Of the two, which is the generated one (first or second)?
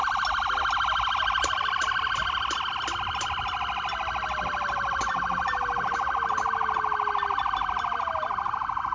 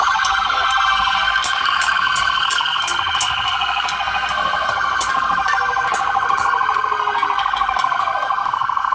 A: second